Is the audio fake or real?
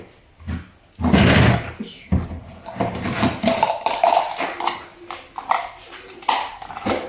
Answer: real